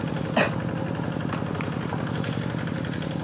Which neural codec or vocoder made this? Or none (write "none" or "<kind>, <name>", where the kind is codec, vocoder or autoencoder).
none